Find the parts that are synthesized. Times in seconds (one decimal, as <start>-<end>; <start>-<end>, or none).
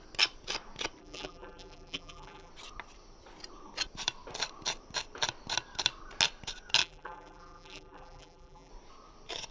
1.0-2.5; 6.8-8.7